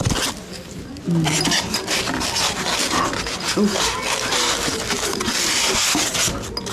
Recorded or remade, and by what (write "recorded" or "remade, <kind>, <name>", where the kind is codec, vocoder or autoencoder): recorded